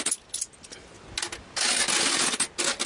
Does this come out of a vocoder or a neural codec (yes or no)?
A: no